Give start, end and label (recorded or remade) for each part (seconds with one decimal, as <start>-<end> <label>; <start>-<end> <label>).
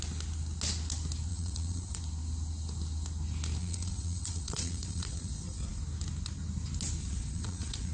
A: 0.0-1.3 recorded; 1.3-2.0 remade; 2.0-3.6 recorded; 3.6-5.8 remade; 5.8-7.0 recorded; 7.0-7.9 remade